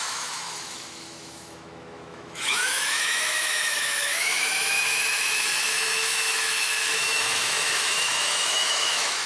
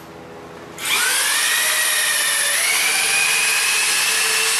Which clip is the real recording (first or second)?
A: second